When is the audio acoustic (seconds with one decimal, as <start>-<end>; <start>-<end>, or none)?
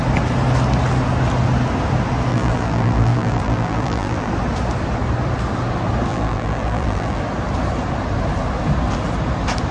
0.0-2.3; 4.3-6.1; 7.2-9.7